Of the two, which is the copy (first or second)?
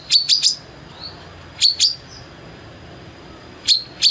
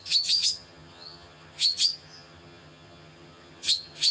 second